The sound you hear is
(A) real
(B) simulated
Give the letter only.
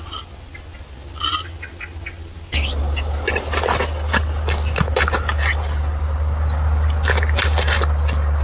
A